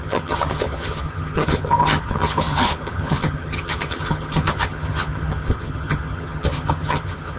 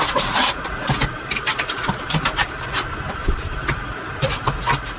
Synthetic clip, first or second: first